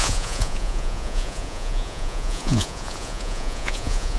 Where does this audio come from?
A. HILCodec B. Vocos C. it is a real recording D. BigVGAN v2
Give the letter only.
B